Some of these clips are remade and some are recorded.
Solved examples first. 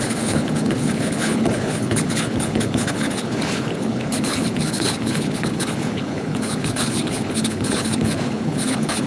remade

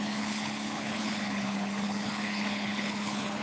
remade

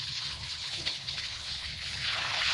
remade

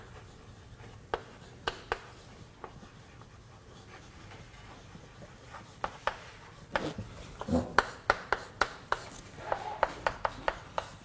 recorded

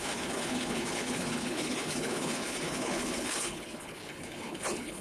remade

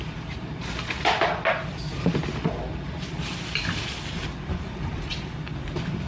recorded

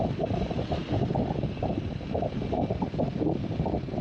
recorded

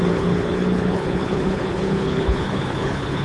remade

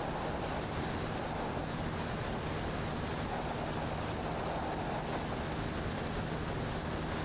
recorded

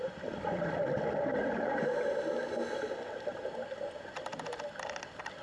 recorded